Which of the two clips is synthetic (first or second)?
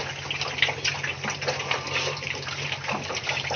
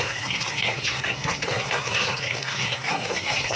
second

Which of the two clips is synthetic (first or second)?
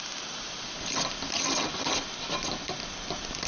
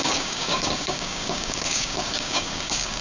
second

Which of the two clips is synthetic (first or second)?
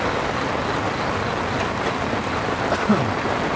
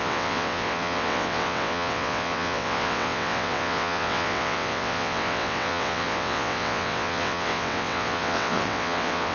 second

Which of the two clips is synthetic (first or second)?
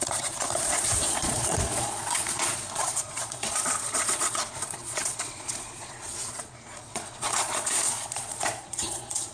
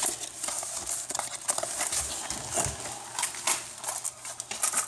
first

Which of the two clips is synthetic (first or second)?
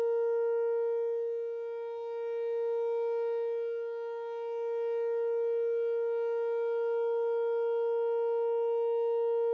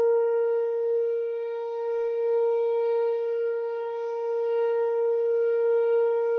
second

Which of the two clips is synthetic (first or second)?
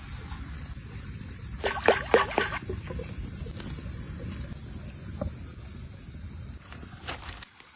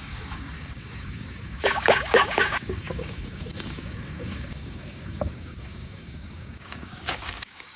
second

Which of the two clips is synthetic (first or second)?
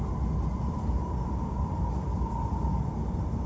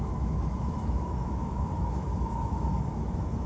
second